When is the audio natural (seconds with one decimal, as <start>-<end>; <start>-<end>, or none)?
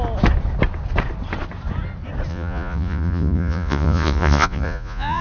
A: 0.0-2.3